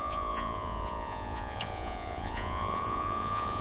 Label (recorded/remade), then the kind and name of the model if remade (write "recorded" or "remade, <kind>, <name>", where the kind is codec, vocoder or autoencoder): remade, vocoder, Vocos